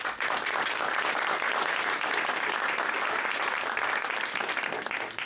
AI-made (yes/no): yes